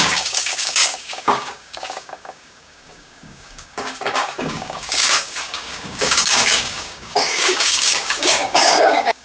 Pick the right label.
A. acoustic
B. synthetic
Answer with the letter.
B